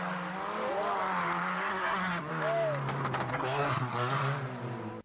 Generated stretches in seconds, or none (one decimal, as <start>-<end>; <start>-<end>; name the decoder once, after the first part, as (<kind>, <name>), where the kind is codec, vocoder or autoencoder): 1.7-2.3 (codec, SNAC); 3.3-4.2